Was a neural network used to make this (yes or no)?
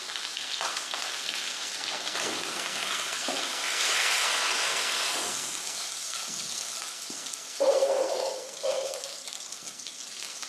yes